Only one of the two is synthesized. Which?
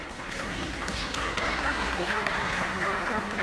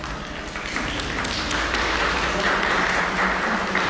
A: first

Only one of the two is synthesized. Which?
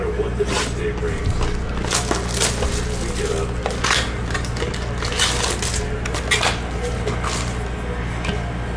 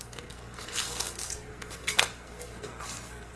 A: second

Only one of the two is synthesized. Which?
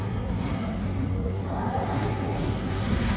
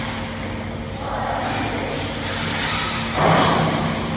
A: first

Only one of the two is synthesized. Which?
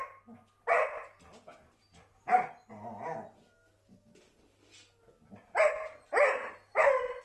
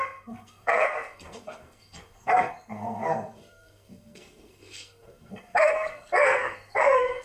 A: second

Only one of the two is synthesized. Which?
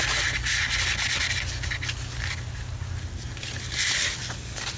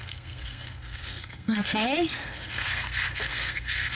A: second